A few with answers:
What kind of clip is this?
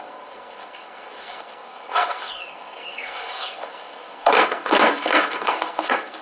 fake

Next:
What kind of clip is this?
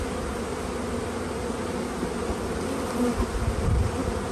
real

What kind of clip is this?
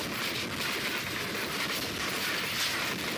real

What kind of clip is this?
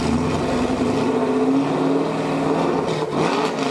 real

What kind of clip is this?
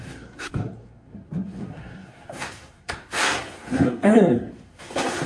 fake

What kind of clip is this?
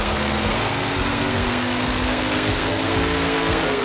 fake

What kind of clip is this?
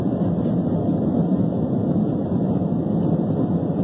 real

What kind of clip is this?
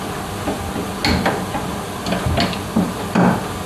real